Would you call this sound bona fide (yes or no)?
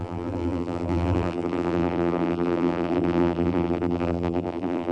no